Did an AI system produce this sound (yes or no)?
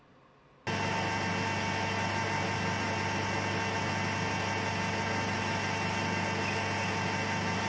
no